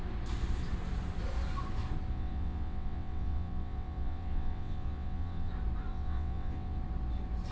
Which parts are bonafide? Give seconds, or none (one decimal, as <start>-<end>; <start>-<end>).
0.0-2.1; 5.5-5.9; 6.8-7.5